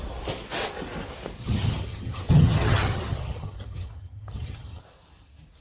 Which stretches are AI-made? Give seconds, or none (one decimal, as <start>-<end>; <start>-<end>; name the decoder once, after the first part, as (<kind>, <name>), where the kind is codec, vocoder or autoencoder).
1.4-4.8 (vocoder, HiFi-GAN)